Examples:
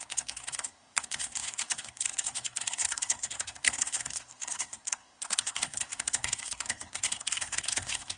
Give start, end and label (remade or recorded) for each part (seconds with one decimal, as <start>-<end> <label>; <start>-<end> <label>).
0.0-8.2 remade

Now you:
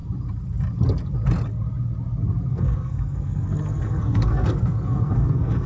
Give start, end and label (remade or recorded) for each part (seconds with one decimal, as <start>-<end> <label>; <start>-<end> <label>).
0.0-2.5 recorded; 2.5-5.7 remade

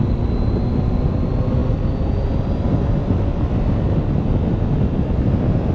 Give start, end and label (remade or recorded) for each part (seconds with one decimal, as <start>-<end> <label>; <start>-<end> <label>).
0.0-5.7 recorded

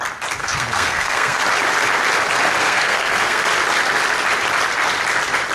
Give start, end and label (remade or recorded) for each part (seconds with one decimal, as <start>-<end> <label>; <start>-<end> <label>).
0.0-0.4 recorded; 0.4-1.4 remade; 1.4-2.6 recorded; 2.6-3.5 remade; 3.5-5.5 recorded